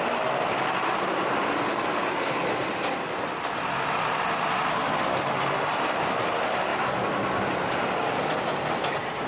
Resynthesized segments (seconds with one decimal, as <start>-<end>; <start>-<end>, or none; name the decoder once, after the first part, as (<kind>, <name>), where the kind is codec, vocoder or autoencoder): none